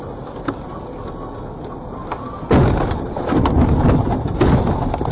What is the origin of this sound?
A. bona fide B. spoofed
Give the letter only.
A